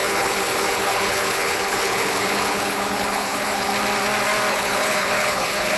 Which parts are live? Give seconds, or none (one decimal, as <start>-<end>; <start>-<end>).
3.7-4.5

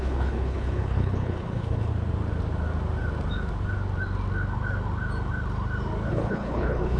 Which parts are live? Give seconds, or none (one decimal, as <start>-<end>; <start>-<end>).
1.9-6.1

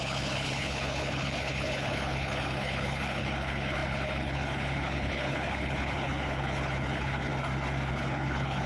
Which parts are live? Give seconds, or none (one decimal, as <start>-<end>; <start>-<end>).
7.3-7.9

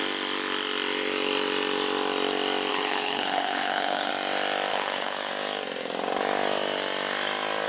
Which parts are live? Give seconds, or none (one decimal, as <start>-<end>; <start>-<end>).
0.0-2.7; 4.1-4.7; 5.3-7.7

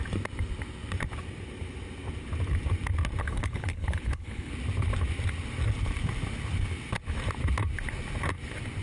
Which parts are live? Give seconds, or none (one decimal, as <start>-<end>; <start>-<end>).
0.0-3.2; 4.5-8.8